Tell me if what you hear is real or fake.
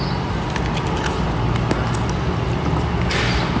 real